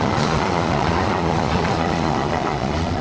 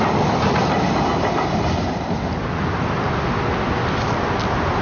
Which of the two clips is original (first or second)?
second